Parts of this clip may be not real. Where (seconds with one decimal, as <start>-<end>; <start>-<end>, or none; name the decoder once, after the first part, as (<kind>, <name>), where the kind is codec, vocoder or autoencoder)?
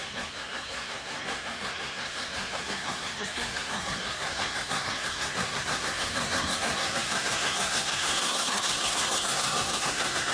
0.0-10.3 (codec, SNAC)